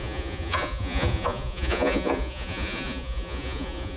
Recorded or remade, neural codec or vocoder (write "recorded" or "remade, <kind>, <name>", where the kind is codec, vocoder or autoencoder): remade, vocoder, Vocos